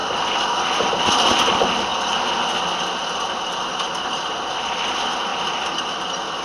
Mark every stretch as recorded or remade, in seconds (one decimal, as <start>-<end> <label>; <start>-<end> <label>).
0.0-5.3 recorded; 5.3-5.9 remade; 5.9-6.4 recorded